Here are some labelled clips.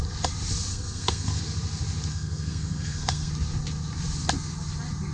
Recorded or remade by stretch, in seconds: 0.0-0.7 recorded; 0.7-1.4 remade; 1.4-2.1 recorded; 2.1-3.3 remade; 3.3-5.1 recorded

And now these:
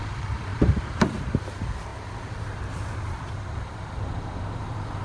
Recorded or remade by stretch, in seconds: 0.0-0.5 recorded; 0.5-1.4 remade; 1.4-5.0 recorded

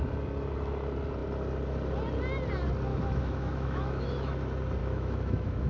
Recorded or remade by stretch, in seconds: 0.0-2.9 recorded; 2.9-4.3 remade; 4.3-4.8 recorded; 4.8-5.7 remade